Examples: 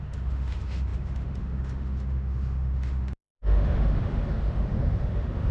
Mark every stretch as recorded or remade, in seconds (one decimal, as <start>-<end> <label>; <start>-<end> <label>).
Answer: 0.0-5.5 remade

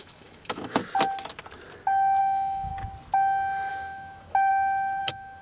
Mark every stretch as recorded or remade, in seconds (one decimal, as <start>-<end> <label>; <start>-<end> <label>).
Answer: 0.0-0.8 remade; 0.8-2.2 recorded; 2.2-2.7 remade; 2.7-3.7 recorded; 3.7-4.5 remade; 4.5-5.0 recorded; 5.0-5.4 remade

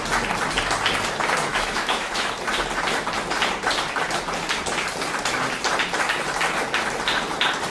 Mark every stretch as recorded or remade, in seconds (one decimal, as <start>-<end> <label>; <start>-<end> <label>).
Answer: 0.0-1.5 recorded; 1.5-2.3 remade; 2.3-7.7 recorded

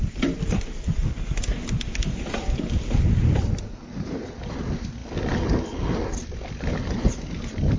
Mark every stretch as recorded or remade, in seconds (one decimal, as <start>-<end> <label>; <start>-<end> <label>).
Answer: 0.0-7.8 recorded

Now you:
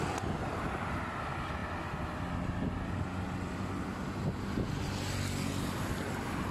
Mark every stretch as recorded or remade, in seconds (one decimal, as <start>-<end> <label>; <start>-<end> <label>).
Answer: 0.0-6.5 recorded

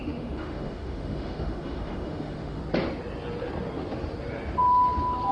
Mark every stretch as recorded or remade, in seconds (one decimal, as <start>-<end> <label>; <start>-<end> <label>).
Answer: 0.0-2.6 remade; 2.6-5.3 recorded